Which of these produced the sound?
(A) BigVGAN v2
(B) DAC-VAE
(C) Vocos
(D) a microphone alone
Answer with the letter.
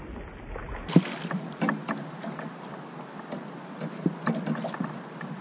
D